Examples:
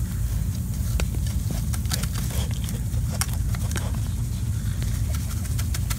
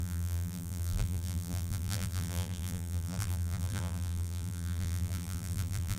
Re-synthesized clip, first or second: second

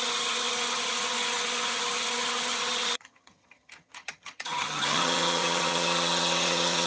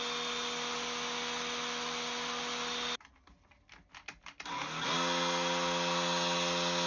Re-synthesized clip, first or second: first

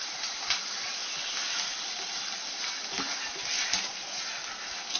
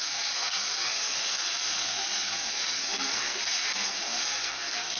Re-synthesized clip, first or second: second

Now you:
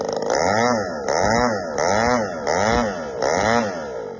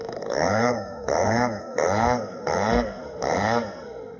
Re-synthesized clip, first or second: second